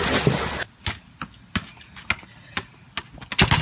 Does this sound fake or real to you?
real